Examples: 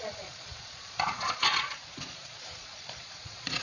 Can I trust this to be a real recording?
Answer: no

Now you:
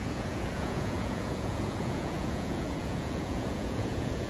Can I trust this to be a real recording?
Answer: no